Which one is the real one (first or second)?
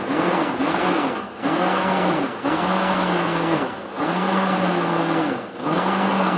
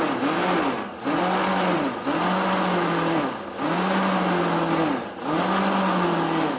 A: second